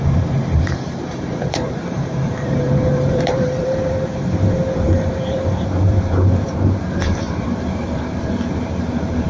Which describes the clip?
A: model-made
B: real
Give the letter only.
A